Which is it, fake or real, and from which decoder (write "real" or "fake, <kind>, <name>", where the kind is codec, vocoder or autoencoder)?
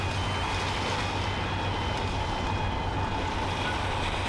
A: real